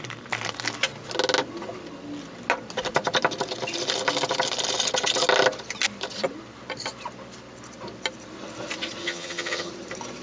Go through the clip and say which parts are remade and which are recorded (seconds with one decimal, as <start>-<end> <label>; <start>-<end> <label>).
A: 0.0-9.0 recorded; 9.0-9.7 remade; 9.7-10.2 recorded